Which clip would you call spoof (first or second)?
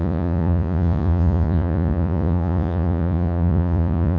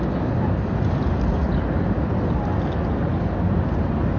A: first